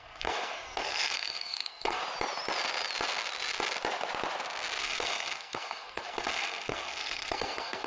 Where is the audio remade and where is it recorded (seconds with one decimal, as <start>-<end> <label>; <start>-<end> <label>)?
0.0-2.0 remade; 2.0-4.8 recorded; 4.8-7.9 remade